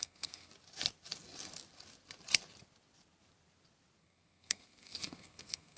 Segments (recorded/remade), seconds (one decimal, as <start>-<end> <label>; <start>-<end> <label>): 0.0-0.5 remade; 0.5-4.0 recorded; 4.0-5.8 remade